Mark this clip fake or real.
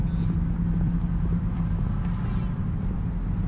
real